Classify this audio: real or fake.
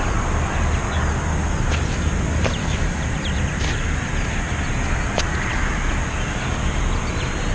real